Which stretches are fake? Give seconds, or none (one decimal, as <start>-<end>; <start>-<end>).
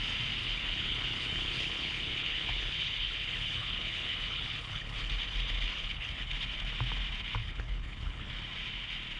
0.4-5.1; 5.7-6.3; 7.4-8.3